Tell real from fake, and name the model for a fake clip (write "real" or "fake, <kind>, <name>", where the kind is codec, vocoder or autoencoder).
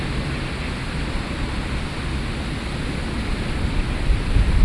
real